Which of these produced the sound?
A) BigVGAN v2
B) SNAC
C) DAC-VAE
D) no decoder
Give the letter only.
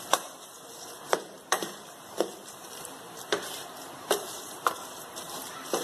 A